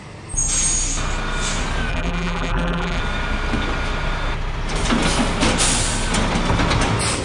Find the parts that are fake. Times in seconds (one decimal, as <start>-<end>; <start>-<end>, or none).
1.9-3.0